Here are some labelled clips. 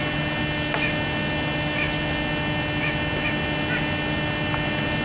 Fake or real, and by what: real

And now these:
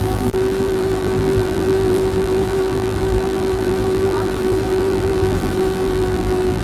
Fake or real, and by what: fake, vocoder, BigVGAN v2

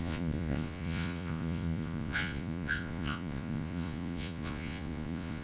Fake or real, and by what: fake, vocoder, Vocos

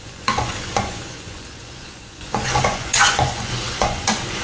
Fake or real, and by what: fake, vocoder, Vocos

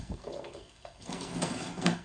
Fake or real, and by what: fake, codec, SNAC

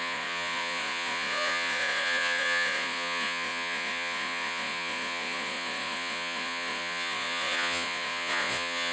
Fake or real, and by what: fake, vocoder, Vocos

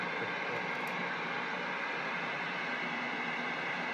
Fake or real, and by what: real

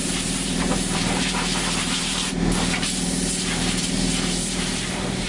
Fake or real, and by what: fake, vocoder, BigVGAN v2